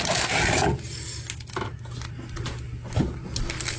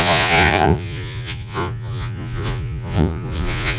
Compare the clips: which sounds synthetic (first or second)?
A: second